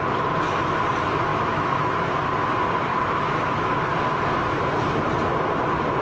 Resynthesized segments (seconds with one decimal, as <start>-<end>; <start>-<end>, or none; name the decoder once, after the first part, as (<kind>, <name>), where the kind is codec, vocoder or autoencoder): 1.3-2.1 (autoencoder, DAC-VAE); 2.9-3.9